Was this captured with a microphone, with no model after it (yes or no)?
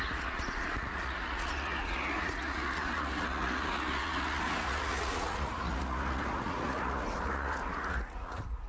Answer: no